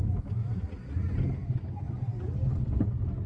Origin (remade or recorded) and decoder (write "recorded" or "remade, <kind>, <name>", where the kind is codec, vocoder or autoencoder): recorded